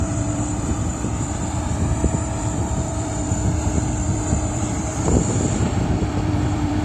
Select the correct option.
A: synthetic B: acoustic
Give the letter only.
A